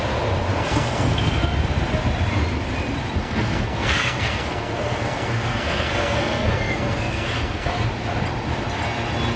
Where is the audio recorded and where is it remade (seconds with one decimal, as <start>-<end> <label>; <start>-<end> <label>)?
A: 0.0-0.5 recorded; 0.5-1.4 remade; 1.4-3.2 recorded; 3.2-7.7 remade; 7.7-9.4 recorded